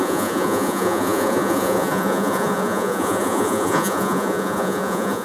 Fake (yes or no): yes